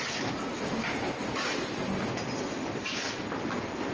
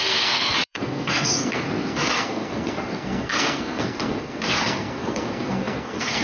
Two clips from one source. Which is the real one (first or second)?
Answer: first